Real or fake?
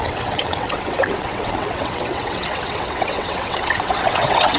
fake